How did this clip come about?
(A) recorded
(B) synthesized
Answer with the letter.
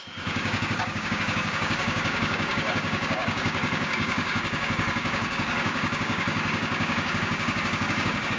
B